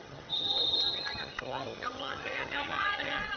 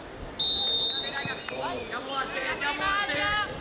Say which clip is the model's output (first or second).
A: first